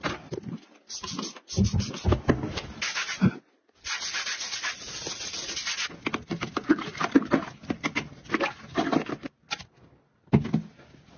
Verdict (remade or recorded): recorded